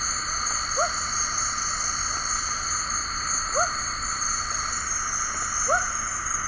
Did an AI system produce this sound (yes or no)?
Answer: no